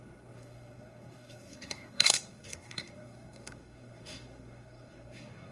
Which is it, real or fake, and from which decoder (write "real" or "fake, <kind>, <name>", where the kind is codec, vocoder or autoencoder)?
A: fake, codec, SNAC